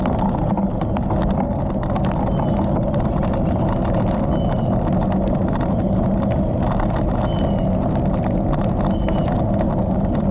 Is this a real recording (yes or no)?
yes